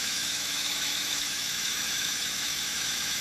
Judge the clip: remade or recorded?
remade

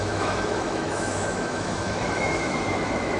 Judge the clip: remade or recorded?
remade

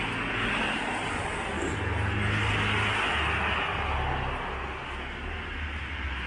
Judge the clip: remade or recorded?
recorded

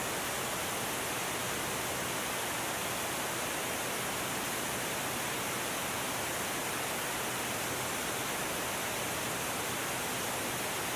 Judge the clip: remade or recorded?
recorded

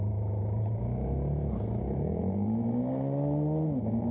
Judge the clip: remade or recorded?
recorded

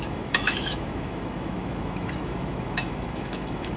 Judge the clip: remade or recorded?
remade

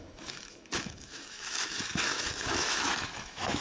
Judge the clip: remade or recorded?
remade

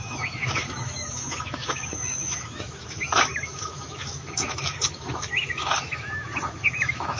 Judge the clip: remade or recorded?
remade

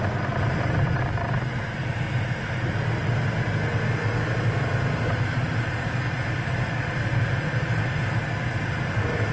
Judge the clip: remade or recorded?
recorded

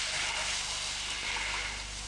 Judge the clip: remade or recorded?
recorded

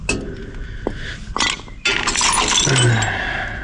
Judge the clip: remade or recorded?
recorded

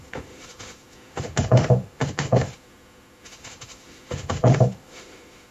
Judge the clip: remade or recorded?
remade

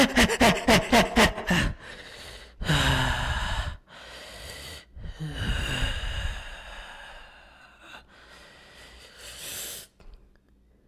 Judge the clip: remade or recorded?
recorded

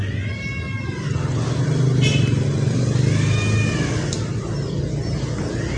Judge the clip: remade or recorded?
recorded